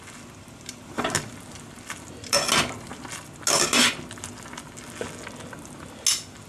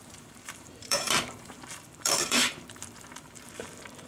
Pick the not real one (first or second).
second